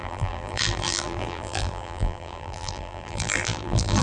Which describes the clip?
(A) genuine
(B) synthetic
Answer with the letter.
B